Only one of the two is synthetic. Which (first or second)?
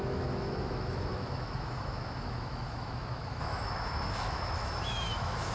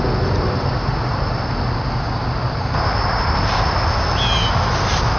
first